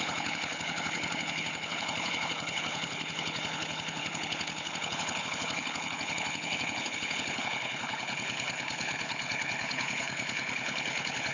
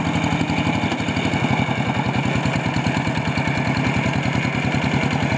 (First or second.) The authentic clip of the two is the second